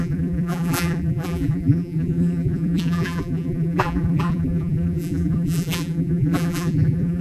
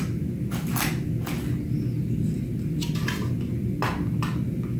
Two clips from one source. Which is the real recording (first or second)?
second